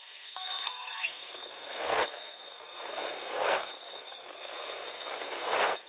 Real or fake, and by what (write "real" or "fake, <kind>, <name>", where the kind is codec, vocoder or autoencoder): fake, codec, SNAC